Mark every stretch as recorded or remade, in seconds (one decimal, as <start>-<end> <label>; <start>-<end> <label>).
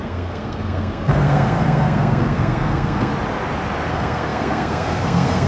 0.0-3.1 remade; 3.1-3.9 recorded; 3.9-5.5 remade